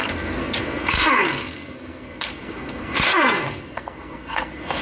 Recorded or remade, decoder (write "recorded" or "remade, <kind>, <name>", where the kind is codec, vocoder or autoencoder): remade, codec, SNAC